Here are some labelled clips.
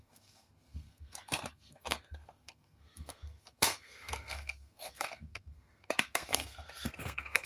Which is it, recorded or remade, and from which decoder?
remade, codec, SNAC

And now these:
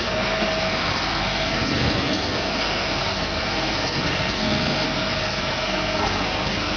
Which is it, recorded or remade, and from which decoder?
remade, codec, SNAC